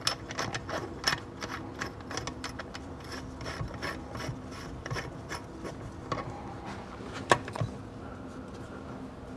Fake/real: real